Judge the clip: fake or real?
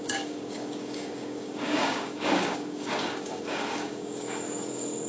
fake